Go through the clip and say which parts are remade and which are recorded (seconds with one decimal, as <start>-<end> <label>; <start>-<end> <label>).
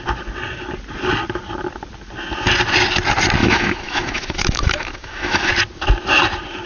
0.0-3.4 recorded; 3.4-5.5 remade; 5.5-6.7 recorded